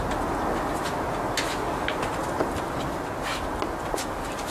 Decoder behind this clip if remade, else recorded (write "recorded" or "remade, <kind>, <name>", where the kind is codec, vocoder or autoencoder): recorded